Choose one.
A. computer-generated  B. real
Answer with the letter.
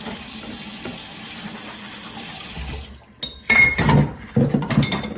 B